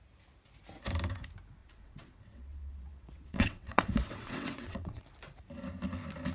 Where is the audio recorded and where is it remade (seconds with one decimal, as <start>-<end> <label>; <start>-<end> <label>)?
0.0-1.6 recorded; 1.6-5.0 remade; 5.0-6.3 recorded